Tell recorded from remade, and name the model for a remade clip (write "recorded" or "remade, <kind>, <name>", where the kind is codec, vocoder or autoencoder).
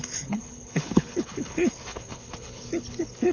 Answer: remade, codec, HILCodec